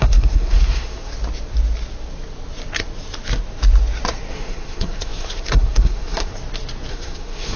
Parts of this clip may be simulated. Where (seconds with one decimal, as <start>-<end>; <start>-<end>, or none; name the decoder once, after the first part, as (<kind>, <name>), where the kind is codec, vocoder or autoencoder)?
0.0-1.1 (codec, SNAC); 4.3-6.3; 6.9-7.6